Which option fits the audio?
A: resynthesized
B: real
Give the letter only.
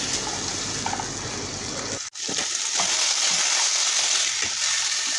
B